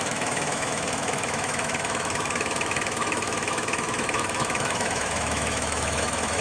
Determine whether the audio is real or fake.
fake